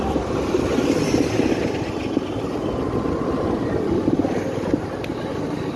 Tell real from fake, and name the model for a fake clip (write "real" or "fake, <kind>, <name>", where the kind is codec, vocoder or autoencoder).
real